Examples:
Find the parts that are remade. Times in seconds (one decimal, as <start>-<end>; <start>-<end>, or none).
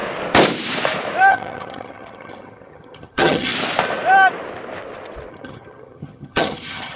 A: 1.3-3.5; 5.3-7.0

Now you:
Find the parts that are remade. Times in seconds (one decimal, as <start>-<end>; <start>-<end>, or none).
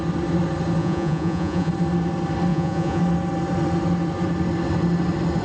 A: 0.8-1.7; 2.5-3.0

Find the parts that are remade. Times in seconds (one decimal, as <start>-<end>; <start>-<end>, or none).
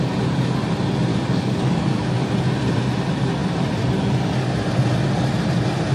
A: 1.1-2.3